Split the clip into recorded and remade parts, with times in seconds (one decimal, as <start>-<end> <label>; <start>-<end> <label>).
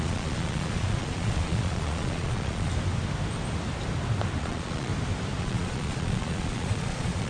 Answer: 0.0-2.7 remade; 2.7-4.4 recorded; 4.4-4.9 remade; 4.9-5.4 recorded; 5.4-7.3 remade